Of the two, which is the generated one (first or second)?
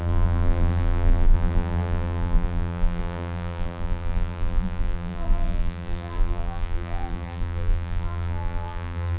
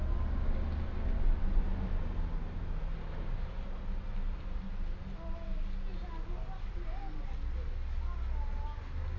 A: first